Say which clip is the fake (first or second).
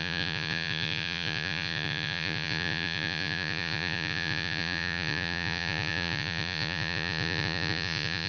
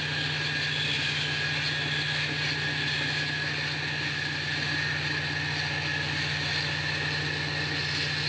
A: first